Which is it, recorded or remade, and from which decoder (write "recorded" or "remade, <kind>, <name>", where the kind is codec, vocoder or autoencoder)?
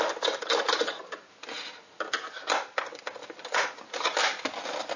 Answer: recorded